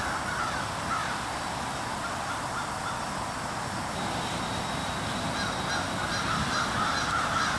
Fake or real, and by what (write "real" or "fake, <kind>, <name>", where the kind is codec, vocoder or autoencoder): real